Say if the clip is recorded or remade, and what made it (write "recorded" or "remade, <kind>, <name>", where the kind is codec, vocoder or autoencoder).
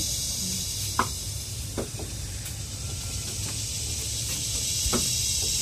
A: recorded